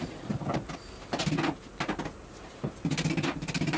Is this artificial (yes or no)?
no